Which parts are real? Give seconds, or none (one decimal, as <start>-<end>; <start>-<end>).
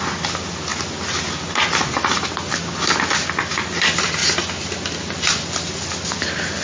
0.0-6.6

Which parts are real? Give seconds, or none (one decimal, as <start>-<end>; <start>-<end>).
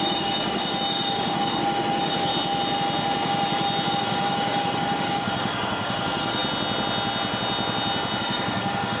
2.3-3.9; 6.4-8.2